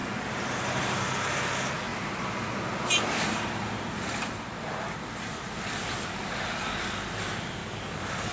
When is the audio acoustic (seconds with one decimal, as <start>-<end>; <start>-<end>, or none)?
0.0-7.6